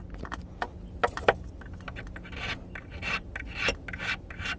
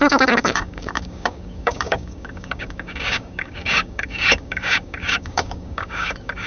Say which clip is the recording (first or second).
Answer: first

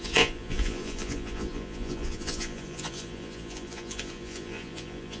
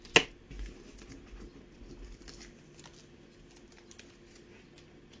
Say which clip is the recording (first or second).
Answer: second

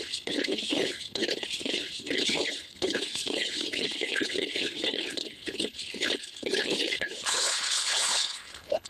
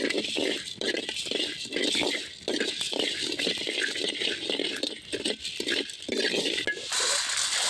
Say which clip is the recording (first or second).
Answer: second